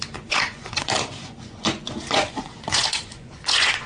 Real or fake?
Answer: fake